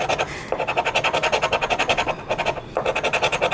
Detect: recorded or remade recorded